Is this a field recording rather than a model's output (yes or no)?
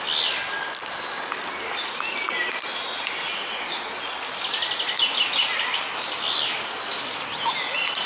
yes